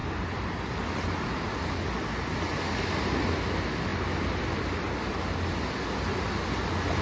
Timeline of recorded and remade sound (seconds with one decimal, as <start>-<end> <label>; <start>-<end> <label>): 0.0-7.0 recorded